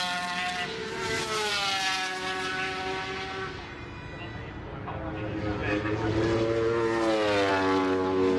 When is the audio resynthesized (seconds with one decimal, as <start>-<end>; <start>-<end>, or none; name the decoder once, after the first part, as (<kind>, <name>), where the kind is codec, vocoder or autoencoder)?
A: 0.8-1.5 (autoencoder, DAC-VAE)